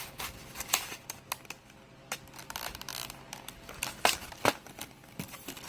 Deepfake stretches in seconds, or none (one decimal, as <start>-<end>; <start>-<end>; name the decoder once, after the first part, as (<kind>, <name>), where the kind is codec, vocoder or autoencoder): none